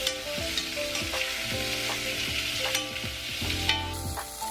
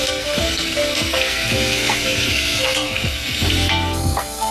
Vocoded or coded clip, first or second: second